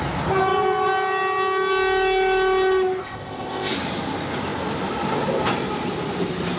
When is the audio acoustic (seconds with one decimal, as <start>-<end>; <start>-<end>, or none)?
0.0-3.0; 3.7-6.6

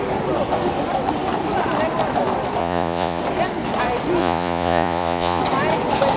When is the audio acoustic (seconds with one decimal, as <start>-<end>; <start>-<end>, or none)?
0.0-2.6; 3.2-4.2; 5.4-6.2

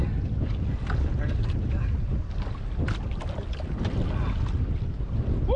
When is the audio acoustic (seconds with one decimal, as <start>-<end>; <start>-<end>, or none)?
0.0-5.6

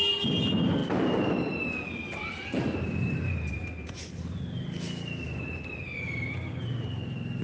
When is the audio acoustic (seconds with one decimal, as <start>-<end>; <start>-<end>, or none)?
0.0-7.4

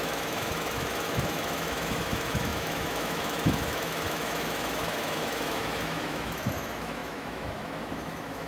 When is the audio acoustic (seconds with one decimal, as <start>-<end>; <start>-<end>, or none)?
none